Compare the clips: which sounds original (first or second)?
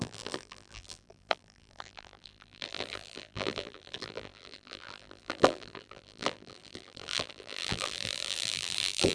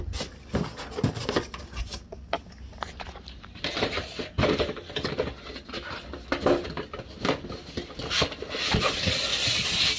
second